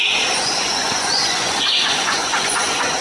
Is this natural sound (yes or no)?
no